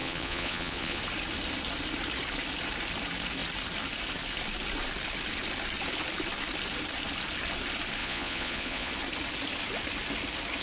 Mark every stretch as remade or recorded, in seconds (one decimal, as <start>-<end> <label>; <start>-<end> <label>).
0.0-1.0 remade; 1.0-8.0 recorded; 8.0-8.9 remade; 8.9-10.6 recorded